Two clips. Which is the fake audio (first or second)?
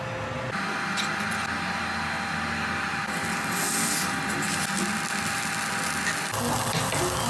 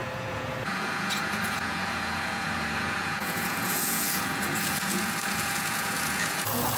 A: second